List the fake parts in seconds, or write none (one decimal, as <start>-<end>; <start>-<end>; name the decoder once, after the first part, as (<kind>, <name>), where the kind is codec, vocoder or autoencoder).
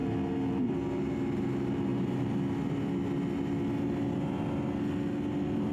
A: none